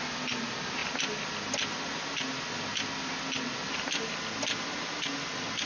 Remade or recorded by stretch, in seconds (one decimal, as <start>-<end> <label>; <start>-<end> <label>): 0.0-5.7 recorded